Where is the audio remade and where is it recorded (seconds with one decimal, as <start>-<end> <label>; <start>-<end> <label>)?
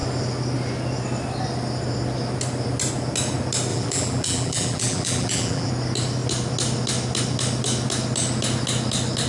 0.0-3.7 recorded; 3.7-5.7 remade; 5.7-9.3 recorded